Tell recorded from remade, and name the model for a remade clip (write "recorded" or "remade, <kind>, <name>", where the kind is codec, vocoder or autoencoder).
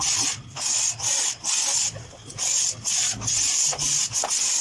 recorded